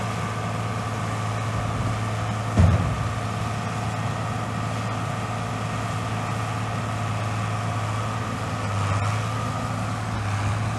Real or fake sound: real